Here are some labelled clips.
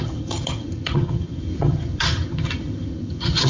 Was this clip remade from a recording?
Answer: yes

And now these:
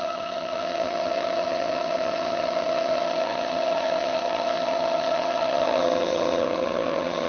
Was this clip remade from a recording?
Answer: yes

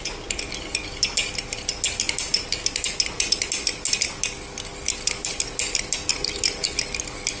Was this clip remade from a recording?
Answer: no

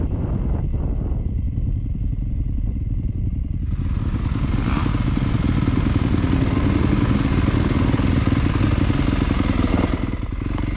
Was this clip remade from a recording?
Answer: no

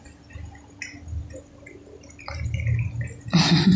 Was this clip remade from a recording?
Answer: no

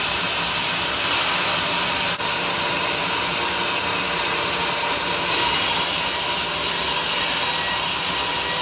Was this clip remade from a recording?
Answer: no